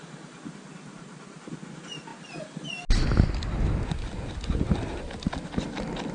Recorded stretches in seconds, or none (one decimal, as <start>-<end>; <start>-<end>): 0.0-6.1